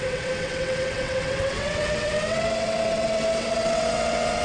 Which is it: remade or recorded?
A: remade